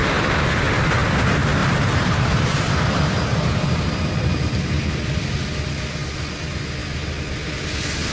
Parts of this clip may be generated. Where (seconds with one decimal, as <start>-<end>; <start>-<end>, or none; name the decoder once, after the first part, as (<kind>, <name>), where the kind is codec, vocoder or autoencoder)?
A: 1.6-4.3 (vocoder, BigVGAN v2)